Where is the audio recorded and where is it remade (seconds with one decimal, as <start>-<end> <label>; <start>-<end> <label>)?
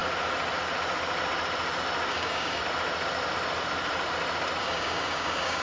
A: 0.0-2.1 recorded; 2.1-2.6 remade; 2.6-4.6 recorded; 4.6-5.6 remade